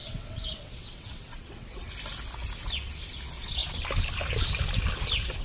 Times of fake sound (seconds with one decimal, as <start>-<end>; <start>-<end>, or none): 0.0-1.9